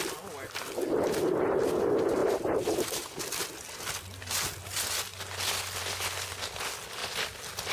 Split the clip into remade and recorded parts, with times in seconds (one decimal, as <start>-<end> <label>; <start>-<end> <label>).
0.0-2.2 recorded; 2.2-3.2 remade; 3.2-7.7 recorded